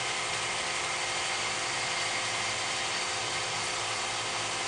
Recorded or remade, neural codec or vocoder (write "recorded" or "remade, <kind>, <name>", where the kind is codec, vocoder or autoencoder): recorded